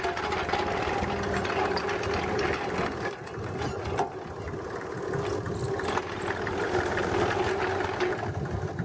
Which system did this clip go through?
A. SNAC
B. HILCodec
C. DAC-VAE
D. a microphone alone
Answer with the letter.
D